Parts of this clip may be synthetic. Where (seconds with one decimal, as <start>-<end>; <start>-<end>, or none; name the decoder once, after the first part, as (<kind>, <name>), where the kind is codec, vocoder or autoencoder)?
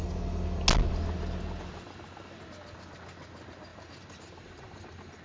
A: 3.7-5.2 (vocoder, BigVGAN v2)